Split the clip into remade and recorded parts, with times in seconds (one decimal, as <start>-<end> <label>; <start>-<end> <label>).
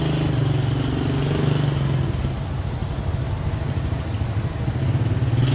0.0-5.5 recorded